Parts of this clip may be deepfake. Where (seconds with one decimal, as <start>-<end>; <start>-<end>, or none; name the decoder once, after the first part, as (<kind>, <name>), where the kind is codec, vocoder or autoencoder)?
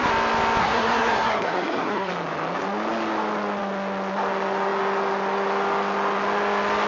0.6-2.1 (codec, SNAC)